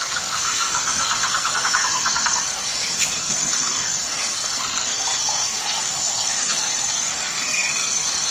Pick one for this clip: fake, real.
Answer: fake